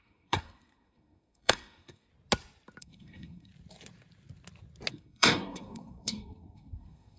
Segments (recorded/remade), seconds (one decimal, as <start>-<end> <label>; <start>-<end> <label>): 0.0-2.1 remade; 2.1-2.8 recorded; 2.8-3.5 remade; 3.5-4.9 recorded; 4.9-7.2 remade